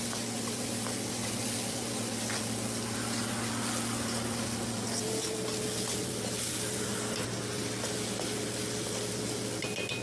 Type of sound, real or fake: real